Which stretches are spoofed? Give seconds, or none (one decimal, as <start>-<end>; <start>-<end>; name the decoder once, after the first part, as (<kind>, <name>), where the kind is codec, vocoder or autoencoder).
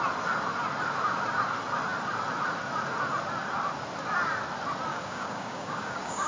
4.9-6.3 (codec, DAC)